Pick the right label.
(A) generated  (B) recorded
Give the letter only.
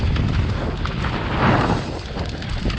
B